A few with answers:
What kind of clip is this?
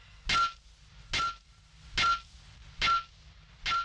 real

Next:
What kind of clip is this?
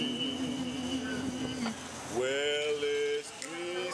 real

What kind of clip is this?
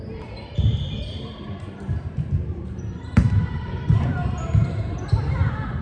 fake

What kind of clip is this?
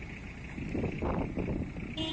real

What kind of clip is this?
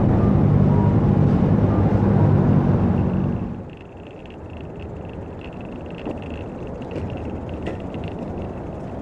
real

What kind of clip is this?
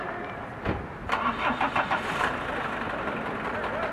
real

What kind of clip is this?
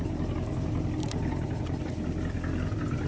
real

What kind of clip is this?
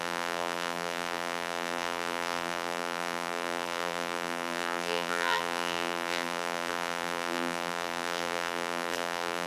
fake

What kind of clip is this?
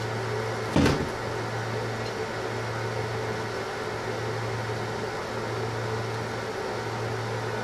real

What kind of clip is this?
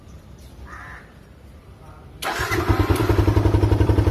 fake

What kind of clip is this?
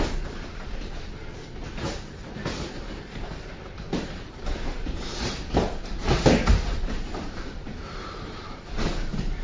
fake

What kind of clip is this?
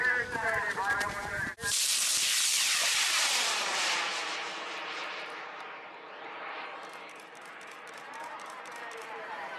fake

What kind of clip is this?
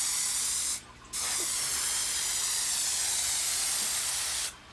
real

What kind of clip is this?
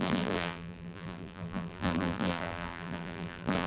fake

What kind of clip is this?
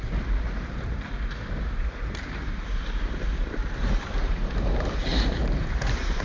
fake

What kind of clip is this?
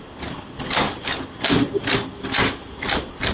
real